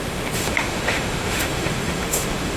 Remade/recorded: remade